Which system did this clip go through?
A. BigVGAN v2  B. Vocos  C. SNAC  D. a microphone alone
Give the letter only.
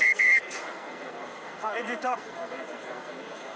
C